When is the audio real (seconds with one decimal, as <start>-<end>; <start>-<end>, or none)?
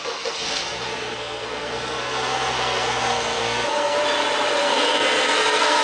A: 4.0-4.6